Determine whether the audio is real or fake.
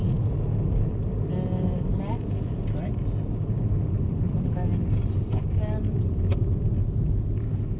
real